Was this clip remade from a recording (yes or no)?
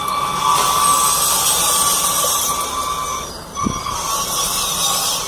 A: no